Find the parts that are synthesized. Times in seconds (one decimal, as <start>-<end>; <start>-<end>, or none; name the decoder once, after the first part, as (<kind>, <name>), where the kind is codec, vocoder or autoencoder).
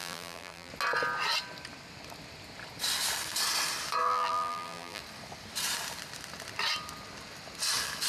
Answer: 0.0-0.7 (vocoder, BigVGAN v2); 4.0-5.0